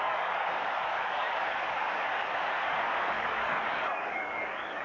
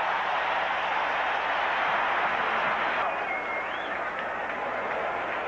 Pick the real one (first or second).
second